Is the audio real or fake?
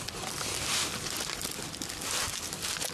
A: real